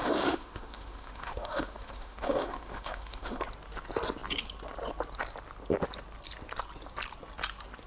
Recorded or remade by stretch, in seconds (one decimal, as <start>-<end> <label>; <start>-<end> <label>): 0.0-3.4 remade; 3.4-7.9 recorded